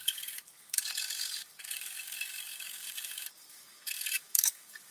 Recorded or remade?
remade